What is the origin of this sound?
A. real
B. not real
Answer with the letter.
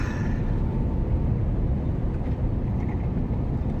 A